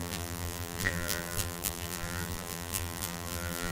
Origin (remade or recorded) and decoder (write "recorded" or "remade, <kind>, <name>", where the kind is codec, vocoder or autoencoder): remade, vocoder, BigVGAN v2